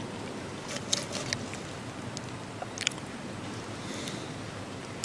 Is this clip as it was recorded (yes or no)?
yes